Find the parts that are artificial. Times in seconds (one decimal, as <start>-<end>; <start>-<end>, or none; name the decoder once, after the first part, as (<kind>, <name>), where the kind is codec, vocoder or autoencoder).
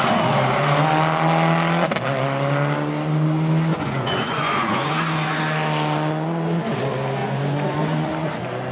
3.7-5.4 (vocoder, Vocos); 7.2-8.1